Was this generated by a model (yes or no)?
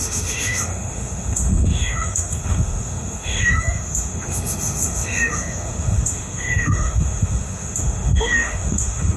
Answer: yes